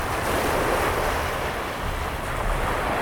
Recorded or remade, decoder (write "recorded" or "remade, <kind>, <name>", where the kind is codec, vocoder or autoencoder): recorded